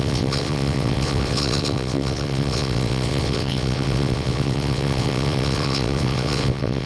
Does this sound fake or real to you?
fake